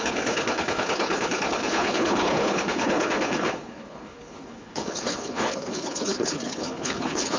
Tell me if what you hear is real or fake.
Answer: fake